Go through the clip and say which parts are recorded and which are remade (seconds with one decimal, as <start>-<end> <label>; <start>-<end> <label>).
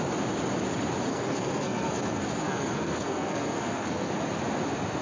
0.0-1.1 recorded; 1.1-4.1 remade; 4.1-5.0 recorded